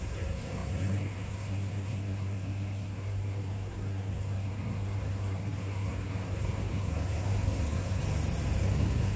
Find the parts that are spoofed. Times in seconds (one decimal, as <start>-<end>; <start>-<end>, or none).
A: 0.0-8.0; 8.6-9.2